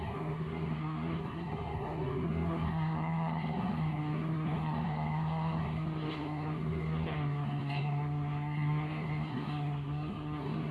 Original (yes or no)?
no